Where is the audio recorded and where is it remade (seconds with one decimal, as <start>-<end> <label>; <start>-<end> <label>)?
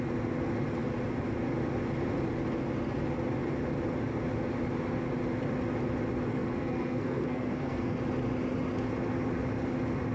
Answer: 0.0-6.3 recorded; 6.3-8.0 remade; 8.0-10.1 recorded